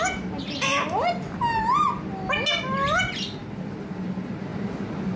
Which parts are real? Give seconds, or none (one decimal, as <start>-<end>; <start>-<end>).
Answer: 0.0-5.2